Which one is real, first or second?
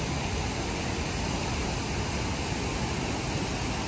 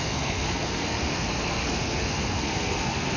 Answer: first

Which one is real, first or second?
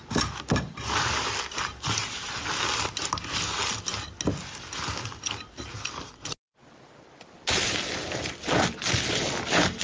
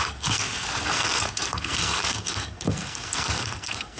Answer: first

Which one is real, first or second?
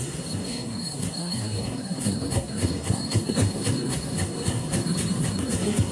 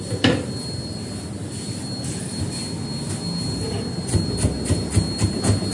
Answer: second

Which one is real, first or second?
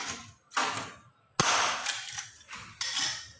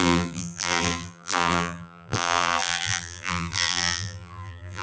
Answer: first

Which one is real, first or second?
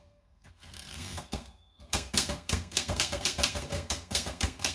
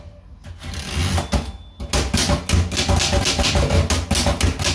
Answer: second